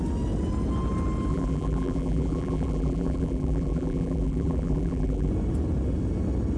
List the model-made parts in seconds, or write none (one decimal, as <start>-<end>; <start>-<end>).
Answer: 1.3-5.3